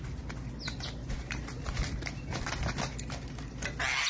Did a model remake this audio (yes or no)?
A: no